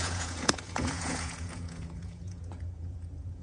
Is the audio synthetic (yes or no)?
yes